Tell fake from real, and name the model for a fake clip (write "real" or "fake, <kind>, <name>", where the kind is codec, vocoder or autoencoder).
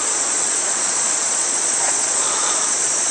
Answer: fake, vocoder, Vocos